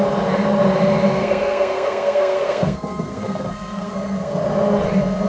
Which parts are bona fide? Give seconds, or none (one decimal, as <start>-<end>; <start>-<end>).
0.0-1.2; 4.4-5.3

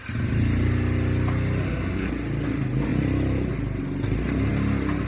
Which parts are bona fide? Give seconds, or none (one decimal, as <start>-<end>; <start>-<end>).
0.0-1.6; 2.1-5.1

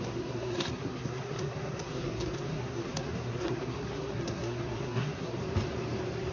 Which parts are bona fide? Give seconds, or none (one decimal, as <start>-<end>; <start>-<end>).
5.4-6.3

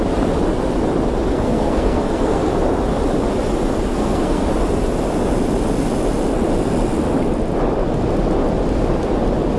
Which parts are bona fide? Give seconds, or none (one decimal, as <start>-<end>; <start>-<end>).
0.0-1.3; 2.5-3.9; 4.5-9.6